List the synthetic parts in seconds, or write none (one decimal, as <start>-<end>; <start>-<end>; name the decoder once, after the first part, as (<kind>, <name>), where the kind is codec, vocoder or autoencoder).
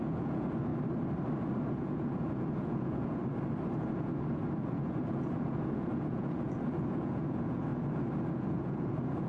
0.0-0.7 (vocoder, Vocos); 1.7-3.2; 3.8-9.3